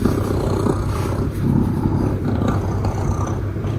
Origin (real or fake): fake